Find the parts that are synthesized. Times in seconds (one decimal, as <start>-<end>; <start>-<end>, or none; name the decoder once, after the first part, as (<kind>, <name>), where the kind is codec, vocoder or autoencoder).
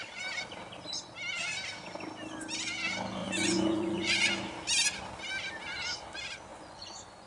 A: 3.2-4.3 (vocoder, Vocos); 6.5-7.3